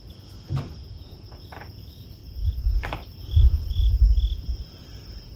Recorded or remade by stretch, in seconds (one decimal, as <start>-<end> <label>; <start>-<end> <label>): 0.0-0.8 recorded; 0.8-1.4 remade; 1.4-2.2 recorded; 2.2-2.8 remade; 2.8-3.2 recorded; 3.2-4.0 remade; 4.0-5.4 recorded